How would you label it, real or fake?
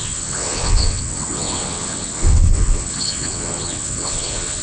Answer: fake